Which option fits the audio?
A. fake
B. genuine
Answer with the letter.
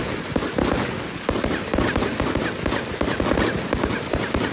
B